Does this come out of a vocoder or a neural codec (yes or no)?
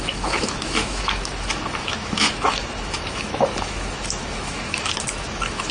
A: yes